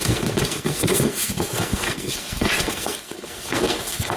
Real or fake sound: fake